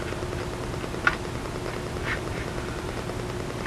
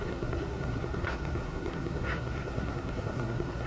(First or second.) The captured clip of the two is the first